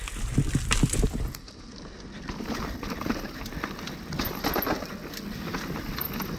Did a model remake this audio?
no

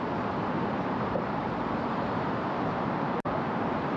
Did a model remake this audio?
yes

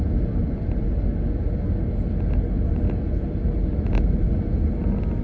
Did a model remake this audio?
no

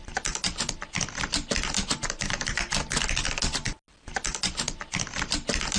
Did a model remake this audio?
no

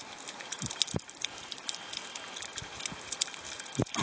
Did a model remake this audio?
no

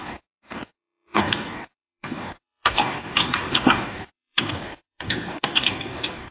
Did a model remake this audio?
yes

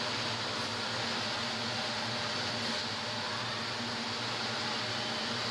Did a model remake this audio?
no